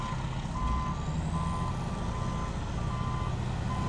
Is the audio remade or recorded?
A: recorded